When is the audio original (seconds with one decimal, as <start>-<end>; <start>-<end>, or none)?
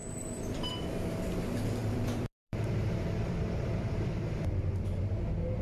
0.7-1.8; 4.7-5.6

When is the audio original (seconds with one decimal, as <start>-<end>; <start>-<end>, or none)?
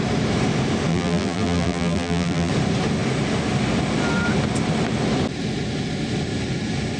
0.0-0.9; 2.5-7.0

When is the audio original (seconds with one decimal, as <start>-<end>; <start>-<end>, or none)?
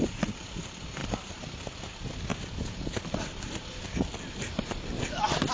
0.0-1.0; 1.8-2.3; 4.5-5.5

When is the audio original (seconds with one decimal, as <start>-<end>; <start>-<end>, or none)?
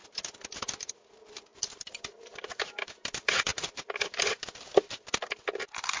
0.0-0.7